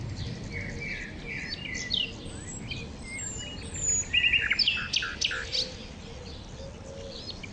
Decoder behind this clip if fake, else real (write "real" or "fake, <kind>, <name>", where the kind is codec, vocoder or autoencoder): real